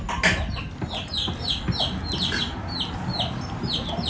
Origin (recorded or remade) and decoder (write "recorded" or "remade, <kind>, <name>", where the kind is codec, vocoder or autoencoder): recorded